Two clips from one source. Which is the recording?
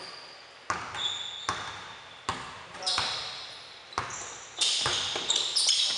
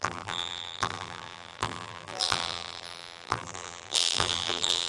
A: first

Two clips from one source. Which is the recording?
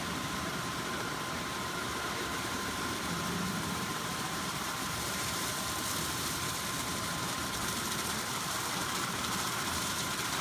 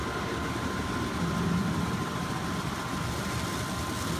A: second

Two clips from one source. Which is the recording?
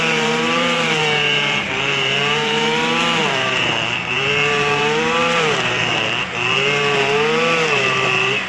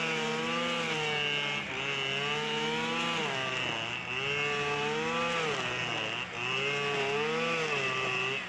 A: second